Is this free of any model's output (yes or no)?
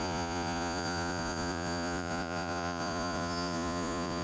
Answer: no